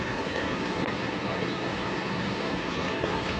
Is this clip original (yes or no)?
no